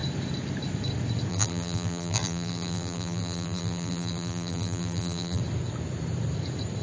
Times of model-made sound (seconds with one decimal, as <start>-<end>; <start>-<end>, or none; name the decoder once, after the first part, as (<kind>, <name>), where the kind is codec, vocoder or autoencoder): 1.3-5.4 (vocoder, BigVGAN v2)